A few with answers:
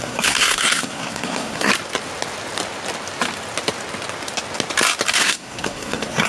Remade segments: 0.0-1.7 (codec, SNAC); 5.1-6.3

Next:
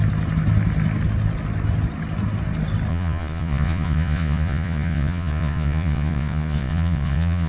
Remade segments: 2.9-7.5 (vocoder, Vocos)

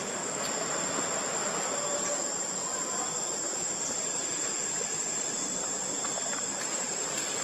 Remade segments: 1.4-5.4 (vocoder, BigVGAN v2); 6.3-7.0

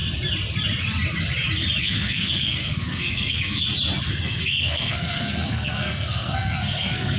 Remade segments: 1.8-3.6 (codec, SNAC); 4.1-7.2

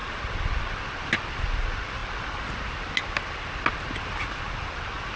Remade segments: none

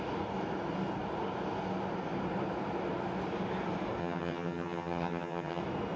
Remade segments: 4.0-5.6 (vocoder, HiFi-GAN)

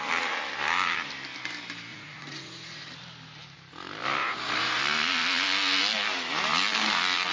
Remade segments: 1.9-2.9 (vocoder, Vocos); 4.2-4.8